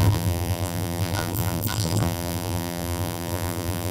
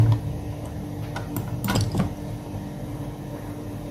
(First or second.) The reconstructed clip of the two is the first